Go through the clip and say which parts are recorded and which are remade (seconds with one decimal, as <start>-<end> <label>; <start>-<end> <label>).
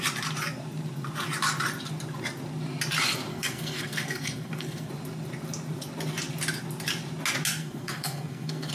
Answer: 0.0-3.3 recorded; 3.3-4.9 remade; 4.9-7.6 recorded; 7.6-8.7 remade